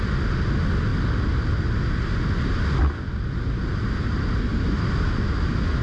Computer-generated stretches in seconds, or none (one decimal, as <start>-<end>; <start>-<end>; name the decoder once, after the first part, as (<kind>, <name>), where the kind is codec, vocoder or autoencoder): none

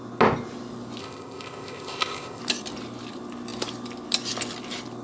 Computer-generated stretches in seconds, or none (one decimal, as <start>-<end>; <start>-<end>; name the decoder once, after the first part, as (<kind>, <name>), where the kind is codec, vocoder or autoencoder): 1.0-2.4 (codec, ZipCodec)

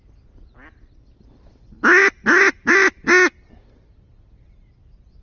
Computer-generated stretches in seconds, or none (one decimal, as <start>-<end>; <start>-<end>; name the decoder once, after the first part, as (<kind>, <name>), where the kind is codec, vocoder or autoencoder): 2.0-3.1 (vocoder, BigVGAN v2)

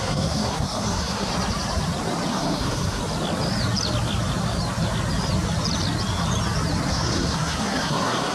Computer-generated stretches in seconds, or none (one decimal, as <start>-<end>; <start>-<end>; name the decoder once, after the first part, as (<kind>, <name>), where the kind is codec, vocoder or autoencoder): 0.0-1.3 (codec, SNAC); 2.3-3.0; 6.9-8.3